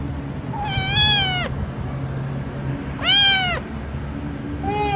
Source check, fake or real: real